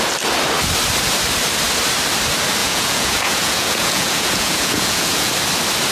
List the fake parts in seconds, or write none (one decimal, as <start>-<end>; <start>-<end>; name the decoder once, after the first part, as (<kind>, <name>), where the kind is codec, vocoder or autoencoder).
2.6-5.3 (vocoder, Vocos)